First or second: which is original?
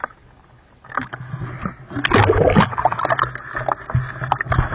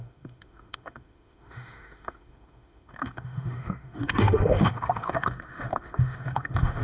first